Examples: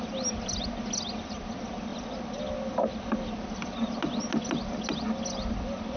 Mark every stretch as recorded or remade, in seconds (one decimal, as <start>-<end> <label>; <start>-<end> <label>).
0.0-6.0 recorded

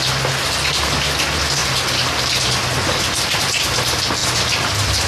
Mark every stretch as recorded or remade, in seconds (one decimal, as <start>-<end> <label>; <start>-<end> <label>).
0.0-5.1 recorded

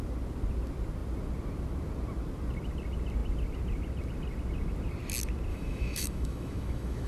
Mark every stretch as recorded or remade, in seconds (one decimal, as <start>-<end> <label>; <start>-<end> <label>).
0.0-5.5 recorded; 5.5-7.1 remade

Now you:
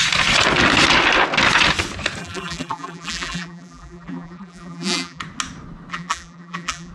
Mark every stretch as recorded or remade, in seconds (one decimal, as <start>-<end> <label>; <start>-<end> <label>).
0.0-2.2 recorded; 2.2-5.2 remade; 5.2-5.9 recorded; 5.9-6.9 remade

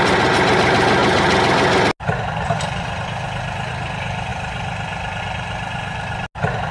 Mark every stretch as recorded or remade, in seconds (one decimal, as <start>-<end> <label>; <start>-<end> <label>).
0.0-6.7 recorded